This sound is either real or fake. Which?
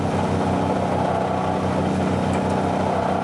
real